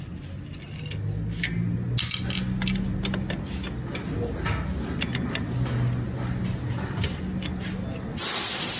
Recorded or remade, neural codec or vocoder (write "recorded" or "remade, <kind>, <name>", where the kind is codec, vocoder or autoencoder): recorded